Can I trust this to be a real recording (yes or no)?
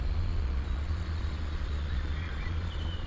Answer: no